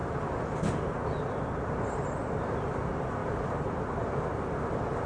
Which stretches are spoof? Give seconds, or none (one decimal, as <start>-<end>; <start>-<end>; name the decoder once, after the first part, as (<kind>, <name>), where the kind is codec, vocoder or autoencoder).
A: 3.2-5.1 (vocoder, BigVGAN v2)